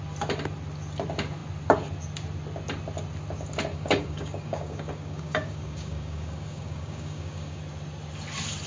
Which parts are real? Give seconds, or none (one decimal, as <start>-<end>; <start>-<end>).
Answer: 0.0-3.7; 7.6-8.7